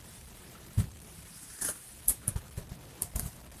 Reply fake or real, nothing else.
fake